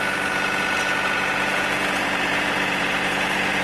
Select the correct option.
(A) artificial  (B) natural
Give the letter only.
A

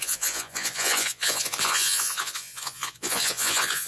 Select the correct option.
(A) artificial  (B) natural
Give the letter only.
A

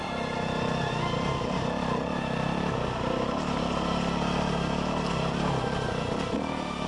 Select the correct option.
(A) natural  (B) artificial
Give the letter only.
A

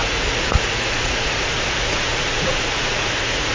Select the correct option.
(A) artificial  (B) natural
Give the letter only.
A